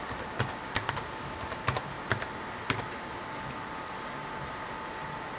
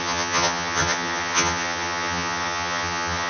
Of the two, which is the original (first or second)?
first